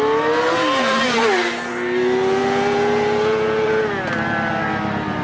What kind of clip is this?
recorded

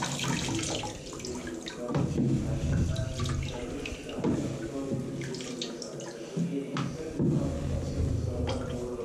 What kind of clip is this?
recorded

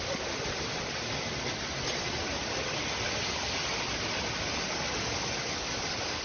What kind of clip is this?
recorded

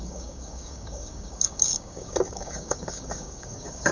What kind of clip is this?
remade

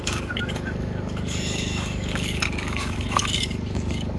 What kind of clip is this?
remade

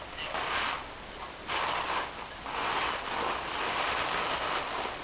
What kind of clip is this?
recorded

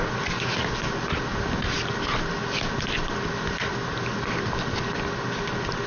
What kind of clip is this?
recorded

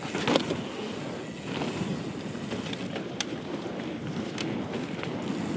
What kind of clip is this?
recorded